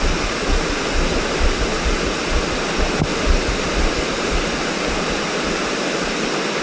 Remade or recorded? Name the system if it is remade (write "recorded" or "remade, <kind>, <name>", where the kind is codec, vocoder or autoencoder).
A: recorded